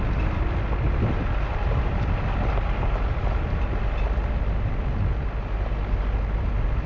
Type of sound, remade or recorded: recorded